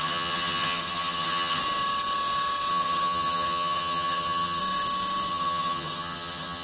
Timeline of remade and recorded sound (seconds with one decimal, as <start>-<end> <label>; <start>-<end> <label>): 0.0-1.6 remade; 1.6-2.7 recorded; 2.7-4.6 remade; 4.6-5.3 recorded; 5.3-6.6 remade

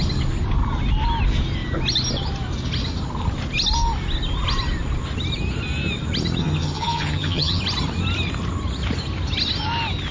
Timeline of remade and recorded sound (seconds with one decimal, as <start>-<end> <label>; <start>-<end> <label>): 0.0-6.4 recorded; 6.4-7.6 remade; 7.6-10.1 recorded

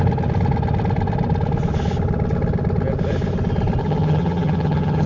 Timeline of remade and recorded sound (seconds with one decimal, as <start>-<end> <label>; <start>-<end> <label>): 0.0-3.8 recorded; 3.8-5.1 remade

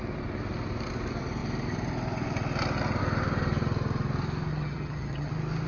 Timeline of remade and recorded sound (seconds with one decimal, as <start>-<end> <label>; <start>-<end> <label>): 0.0-4.5 recorded; 4.5-5.3 remade; 5.3-5.7 recorded

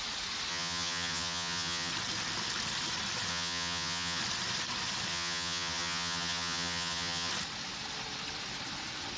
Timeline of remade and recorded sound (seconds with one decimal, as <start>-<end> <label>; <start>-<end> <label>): 0.0-0.5 recorded; 0.5-1.9 remade; 1.9-3.3 recorded; 3.3-4.2 remade; 4.2-5.1 recorded; 5.1-7.3 remade; 7.3-9.2 recorded